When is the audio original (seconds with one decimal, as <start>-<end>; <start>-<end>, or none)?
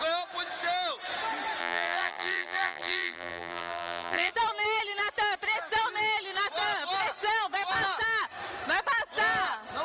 0.0-1.6; 4.3-9.8